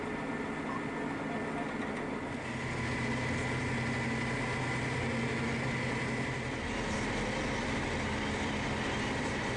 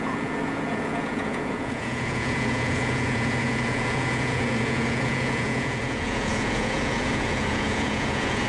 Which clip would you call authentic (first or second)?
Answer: first